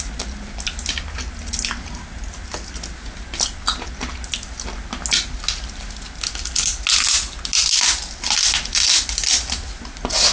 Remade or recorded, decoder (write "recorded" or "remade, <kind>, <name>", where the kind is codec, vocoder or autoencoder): recorded